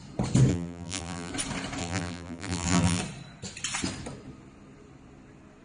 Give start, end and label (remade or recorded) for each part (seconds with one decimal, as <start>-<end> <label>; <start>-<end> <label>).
0.0-0.5 recorded; 0.5-1.3 remade; 1.3-1.8 recorded; 1.8-3.0 remade; 3.0-5.6 recorded